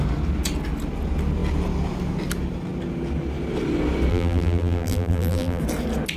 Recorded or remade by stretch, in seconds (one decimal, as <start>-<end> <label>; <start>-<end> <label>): 0.0-4.1 recorded; 4.1-5.6 remade; 5.6-6.2 recorded